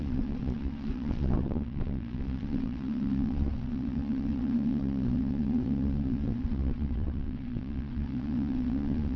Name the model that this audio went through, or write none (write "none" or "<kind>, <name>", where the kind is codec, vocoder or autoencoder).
vocoder, WaveNeXt